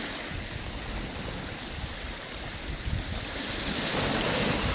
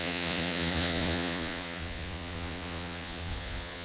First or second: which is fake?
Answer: second